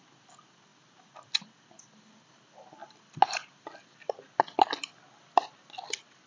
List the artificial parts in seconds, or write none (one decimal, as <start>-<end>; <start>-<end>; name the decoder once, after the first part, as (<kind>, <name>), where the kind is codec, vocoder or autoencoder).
none